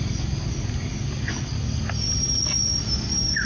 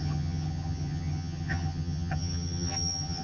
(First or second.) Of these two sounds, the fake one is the second